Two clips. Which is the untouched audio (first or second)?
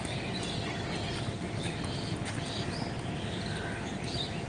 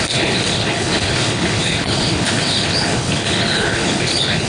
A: first